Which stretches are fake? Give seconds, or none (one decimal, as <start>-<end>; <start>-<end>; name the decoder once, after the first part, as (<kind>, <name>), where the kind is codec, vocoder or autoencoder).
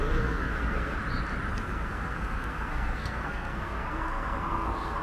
0.0-1.0 (codec, SNAC); 1.5-5.0